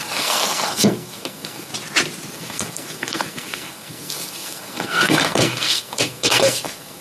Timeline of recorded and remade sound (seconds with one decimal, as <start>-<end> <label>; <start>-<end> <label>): 0.0-1.7 remade; 1.7-2.3 recorded; 2.3-7.0 remade